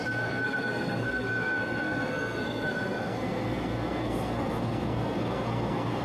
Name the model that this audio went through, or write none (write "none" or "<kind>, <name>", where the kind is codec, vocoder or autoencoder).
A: codec, SNAC